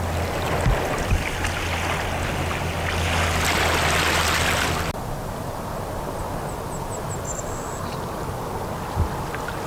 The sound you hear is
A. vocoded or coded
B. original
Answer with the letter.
B